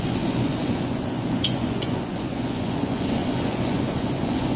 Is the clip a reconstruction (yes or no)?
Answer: yes